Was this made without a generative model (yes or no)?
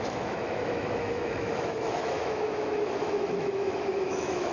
no